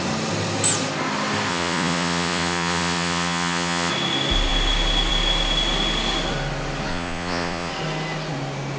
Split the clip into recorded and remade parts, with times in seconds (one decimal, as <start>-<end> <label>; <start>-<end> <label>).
0.0-1.5 recorded; 1.5-3.9 remade; 3.9-6.9 recorded; 6.9-7.7 remade; 7.7-8.8 recorded